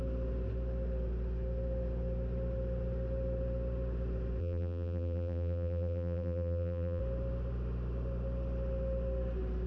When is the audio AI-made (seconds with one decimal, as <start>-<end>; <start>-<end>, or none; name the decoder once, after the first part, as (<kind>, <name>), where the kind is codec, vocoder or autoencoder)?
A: 4.4-7.0 (vocoder, BigVGAN v2)